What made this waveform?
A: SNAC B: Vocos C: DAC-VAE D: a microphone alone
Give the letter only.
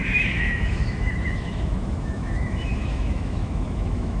C